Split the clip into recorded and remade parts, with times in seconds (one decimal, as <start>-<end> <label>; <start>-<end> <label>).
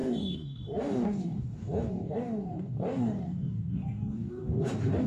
0.0-5.1 remade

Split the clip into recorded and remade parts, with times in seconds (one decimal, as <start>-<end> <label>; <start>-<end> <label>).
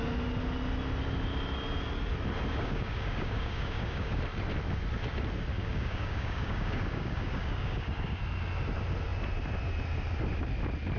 0.0-2.5 recorded; 2.5-4.2 remade; 4.2-5.5 recorded; 5.5-8.2 remade; 8.2-11.0 recorded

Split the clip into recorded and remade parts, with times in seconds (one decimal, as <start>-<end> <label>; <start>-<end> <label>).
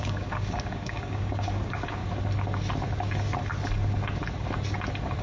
0.0-2.0 remade; 2.0-5.2 recorded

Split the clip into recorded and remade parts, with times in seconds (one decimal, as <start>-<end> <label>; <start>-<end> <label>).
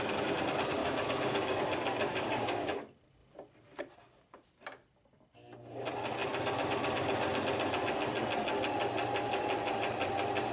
0.0-0.8 recorded; 0.8-1.6 remade; 1.6-2.1 recorded; 2.1-2.8 remade; 2.8-10.5 recorded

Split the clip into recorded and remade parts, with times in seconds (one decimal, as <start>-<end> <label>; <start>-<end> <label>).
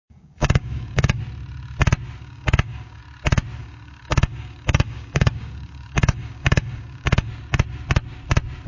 0.0-1.2 remade; 1.2-2.2 recorded; 2.2-3.0 remade; 3.0-3.6 recorded; 3.6-7.3 remade; 7.3-8.7 recorded